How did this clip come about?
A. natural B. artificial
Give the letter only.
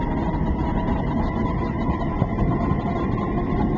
A